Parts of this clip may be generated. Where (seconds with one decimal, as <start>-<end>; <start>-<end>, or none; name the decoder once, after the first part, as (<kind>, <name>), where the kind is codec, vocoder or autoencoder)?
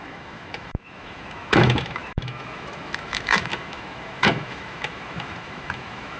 0.0-6.2 (autoencoder, DAC-VAE)